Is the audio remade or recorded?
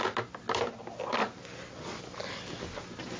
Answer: recorded